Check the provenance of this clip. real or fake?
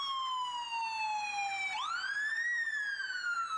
real